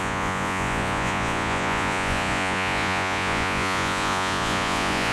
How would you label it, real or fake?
fake